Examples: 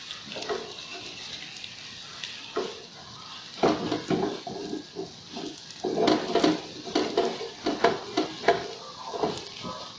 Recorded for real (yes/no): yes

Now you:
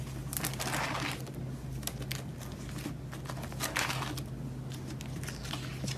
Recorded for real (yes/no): yes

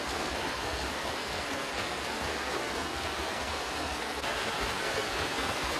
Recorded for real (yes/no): no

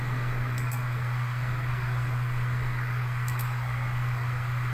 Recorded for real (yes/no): no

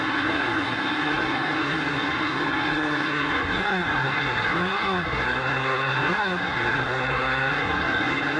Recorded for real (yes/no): no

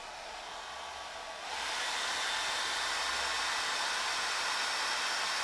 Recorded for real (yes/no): yes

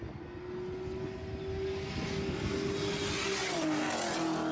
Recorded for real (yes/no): yes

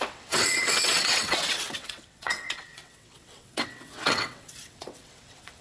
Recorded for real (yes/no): no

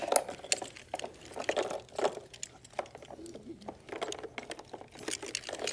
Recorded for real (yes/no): yes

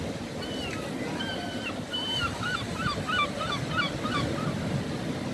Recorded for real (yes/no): yes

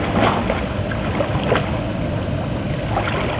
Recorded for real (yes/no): yes